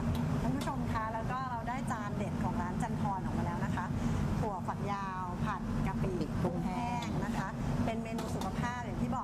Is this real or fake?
real